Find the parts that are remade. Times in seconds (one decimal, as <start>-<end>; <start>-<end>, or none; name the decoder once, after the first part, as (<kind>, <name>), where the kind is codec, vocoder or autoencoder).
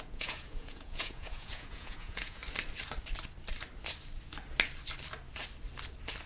0.0-2.4 (vocoder, Vocos)